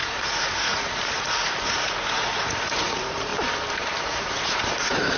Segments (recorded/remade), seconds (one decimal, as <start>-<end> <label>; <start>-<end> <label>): 0.0-3.3 remade; 3.3-4.0 recorded; 4.0-5.2 remade